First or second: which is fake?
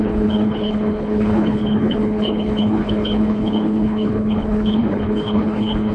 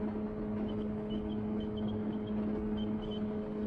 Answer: first